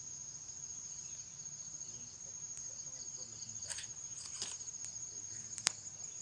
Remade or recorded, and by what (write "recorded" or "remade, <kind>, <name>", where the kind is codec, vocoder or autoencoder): recorded